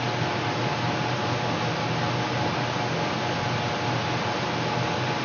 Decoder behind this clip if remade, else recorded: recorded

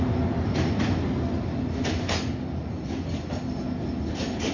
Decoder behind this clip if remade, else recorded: recorded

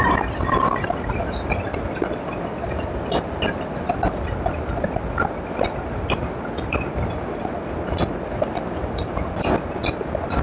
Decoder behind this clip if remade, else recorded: recorded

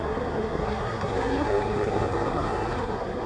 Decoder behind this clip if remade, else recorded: remade, codec, SNAC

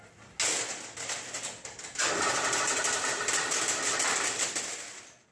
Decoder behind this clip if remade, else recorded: recorded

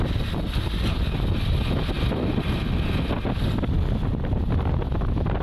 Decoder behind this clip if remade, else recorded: recorded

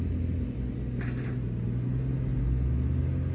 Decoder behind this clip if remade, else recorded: recorded